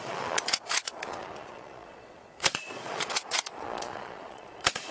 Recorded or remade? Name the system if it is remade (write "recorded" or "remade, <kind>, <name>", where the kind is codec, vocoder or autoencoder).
remade, vocoder, Vocos